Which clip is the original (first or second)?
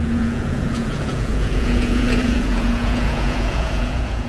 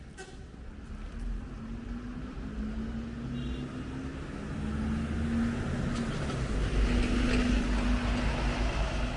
second